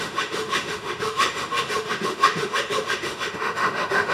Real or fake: fake